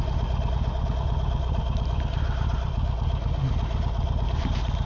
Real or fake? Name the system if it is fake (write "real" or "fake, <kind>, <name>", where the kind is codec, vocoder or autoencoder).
real